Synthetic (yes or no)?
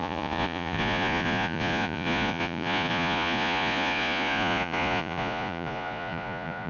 yes